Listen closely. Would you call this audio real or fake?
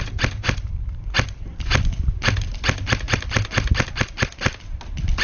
real